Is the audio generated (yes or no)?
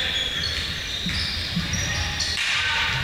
no